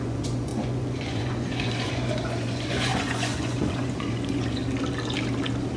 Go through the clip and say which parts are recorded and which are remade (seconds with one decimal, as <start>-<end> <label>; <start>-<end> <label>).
0.0-4.6 remade; 4.6-5.8 recorded

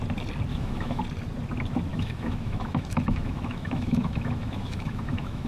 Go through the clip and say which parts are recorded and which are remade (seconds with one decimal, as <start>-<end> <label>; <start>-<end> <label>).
0.0-0.5 recorded; 0.5-1.0 remade; 1.0-1.9 recorded; 1.9-5.5 remade

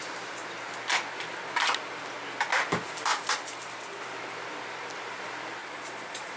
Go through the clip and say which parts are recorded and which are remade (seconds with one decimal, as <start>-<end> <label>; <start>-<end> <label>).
0.0-5.6 recorded; 5.6-6.4 remade

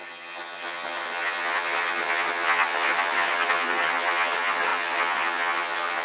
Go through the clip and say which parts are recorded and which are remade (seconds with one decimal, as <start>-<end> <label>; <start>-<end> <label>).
0.0-6.0 remade

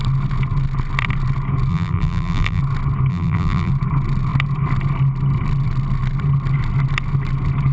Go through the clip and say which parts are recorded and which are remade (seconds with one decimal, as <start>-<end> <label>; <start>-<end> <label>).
0.0-1.7 recorded; 1.7-2.6 remade; 2.6-3.1 recorded; 3.1-3.7 remade; 3.7-7.7 recorded

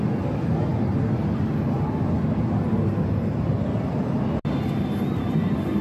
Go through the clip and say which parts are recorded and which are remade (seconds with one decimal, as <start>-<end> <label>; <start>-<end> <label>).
0.0-5.8 recorded

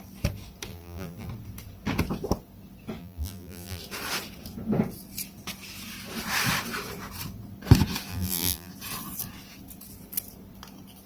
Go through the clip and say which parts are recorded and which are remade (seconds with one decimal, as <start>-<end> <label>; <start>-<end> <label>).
0.0-0.7 recorded; 0.7-1.3 remade; 1.3-3.0 recorded; 3.0-3.8 remade; 3.8-8.1 recorded; 8.1-8.7 remade; 8.7-11.1 recorded